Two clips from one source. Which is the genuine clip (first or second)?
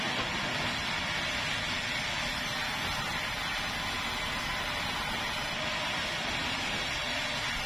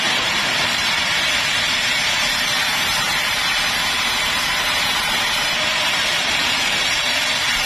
first